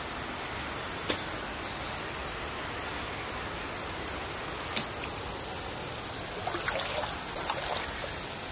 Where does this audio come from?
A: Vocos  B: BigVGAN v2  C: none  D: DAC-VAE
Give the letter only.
C